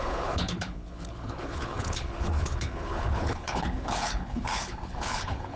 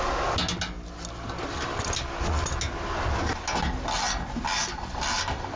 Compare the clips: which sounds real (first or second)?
second